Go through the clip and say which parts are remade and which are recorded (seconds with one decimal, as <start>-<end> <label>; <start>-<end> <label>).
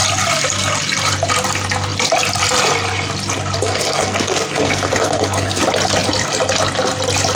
0.0-3.6 recorded; 3.6-5.6 remade; 5.6-7.4 recorded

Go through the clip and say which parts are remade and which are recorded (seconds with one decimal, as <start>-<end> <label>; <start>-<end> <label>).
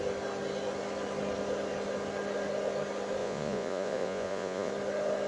0.0-3.2 recorded; 3.2-4.7 remade; 4.7-5.3 recorded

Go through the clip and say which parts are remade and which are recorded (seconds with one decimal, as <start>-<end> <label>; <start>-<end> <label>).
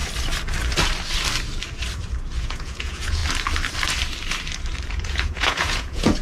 0.0-2.4 recorded; 2.4-3.2 remade; 3.2-4.9 recorded; 4.9-6.2 remade